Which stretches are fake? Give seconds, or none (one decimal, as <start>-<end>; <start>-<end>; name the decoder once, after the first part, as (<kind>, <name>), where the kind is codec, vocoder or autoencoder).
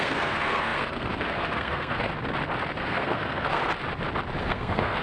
0.0-2.1 (codec, SNAC); 2.8-3.6; 4.4-5.0